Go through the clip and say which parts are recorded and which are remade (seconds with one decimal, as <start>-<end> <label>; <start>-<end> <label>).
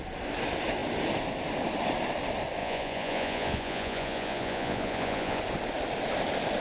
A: 0.0-2.6 recorded; 2.6-5.4 remade; 5.4-6.6 recorded